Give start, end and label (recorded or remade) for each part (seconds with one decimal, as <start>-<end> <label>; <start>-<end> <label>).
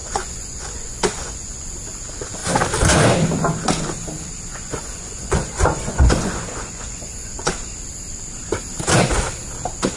0.0-1.7 remade; 1.7-4.5 recorded; 4.5-7.5 remade; 7.5-10.0 recorded